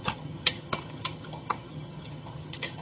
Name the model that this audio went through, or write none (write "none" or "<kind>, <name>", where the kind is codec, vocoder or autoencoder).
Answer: vocoder, HiFi-GAN